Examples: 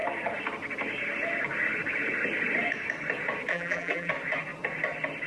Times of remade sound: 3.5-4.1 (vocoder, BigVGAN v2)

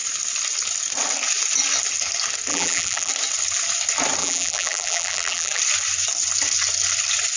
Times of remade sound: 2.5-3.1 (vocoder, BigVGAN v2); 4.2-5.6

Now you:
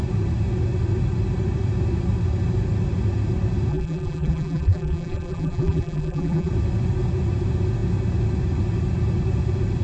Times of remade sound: 3.7-6.5 (vocoder, BigVGAN v2)

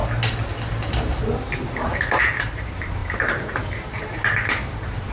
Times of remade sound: 2.2-5.1 (vocoder, BigVGAN v2)